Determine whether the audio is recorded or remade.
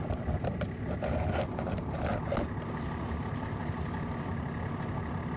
recorded